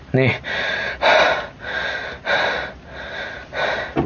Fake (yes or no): no